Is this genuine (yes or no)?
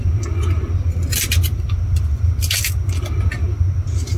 yes